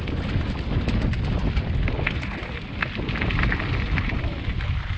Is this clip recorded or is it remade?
recorded